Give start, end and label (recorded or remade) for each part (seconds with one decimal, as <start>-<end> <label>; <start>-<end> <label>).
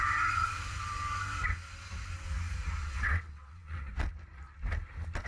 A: 0.0-2.8 recorded; 2.8-3.9 remade; 3.9-5.3 recorded